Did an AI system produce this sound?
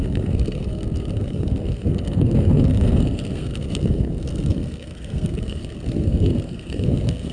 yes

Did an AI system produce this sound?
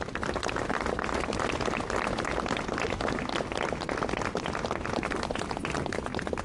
no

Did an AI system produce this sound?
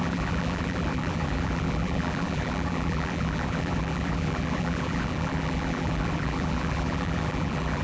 yes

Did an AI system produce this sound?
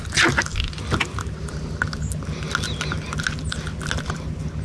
no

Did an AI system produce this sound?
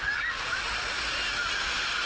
no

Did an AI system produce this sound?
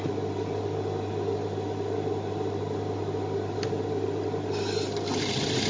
no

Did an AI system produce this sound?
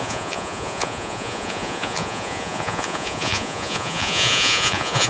yes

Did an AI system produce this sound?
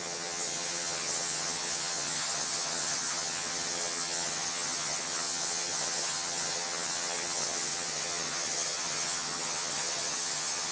yes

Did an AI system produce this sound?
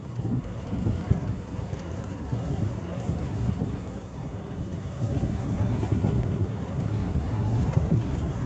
yes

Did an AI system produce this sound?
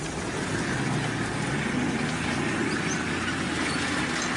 no